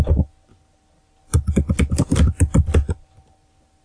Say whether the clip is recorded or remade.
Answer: recorded